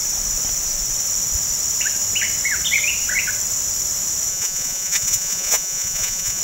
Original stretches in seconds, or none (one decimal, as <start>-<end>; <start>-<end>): 0.0-4.3